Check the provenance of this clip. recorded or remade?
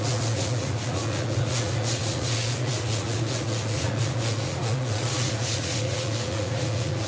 remade